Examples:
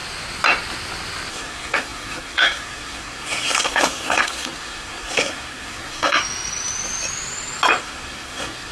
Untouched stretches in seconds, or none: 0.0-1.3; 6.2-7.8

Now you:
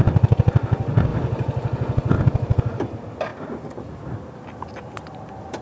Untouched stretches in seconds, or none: 0.0-5.6

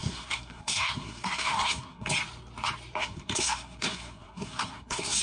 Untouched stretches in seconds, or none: 2.1-3.0

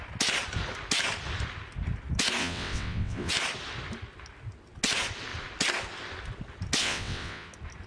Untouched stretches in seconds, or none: 0.0-2.4; 3.3-6.8; 7.5-7.9

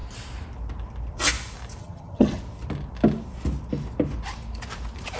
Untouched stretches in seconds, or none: 0.0-1.8; 2.4-5.2

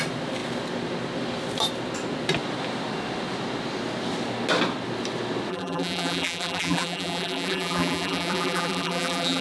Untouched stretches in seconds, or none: 0.0-5.5

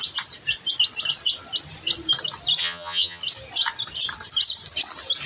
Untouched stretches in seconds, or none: 0.0-2.6; 3.2-5.3

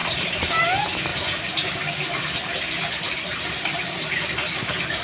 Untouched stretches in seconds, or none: 0.5-1.1; 4.1-5.0